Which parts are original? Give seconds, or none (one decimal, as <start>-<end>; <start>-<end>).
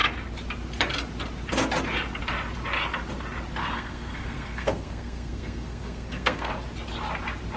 0.0-3.6; 6.5-7.6